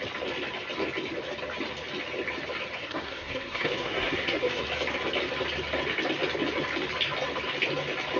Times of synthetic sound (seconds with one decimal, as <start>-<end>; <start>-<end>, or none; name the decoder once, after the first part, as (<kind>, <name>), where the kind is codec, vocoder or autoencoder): 2.8-4.6 (codec, SNAC)